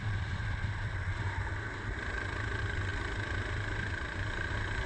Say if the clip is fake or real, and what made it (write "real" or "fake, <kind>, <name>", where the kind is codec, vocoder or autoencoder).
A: real